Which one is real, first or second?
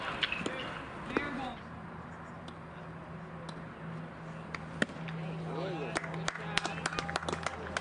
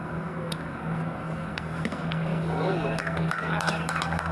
first